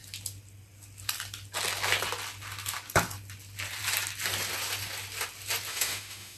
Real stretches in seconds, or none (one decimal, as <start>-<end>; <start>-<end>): 0.0-5.7